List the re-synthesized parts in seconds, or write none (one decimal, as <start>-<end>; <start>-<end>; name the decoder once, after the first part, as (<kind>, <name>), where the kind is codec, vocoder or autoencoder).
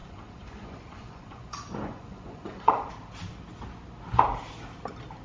0.0-2.9 (vocoder, Vocos)